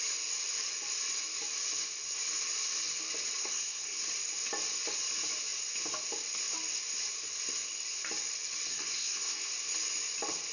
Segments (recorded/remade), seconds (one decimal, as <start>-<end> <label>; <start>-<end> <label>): 0.0-3.4 recorded; 3.4-4.0 remade; 4.0-8.7 recorded; 8.7-9.5 remade; 9.5-10.5 recorded